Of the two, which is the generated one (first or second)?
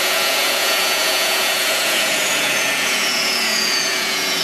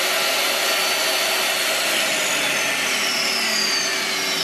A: first